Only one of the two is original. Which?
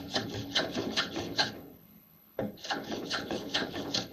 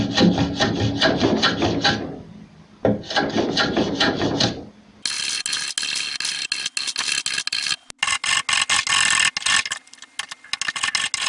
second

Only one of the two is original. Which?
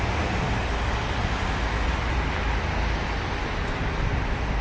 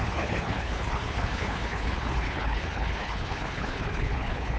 first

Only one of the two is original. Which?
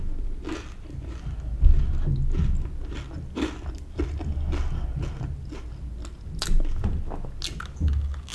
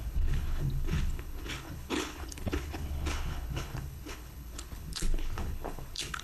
first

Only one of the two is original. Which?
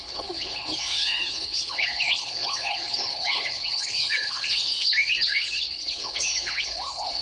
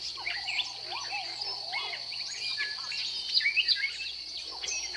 second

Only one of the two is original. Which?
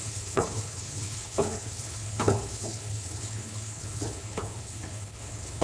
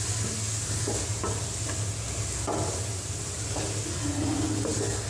second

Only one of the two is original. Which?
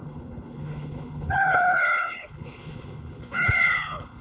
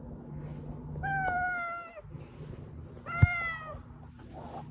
second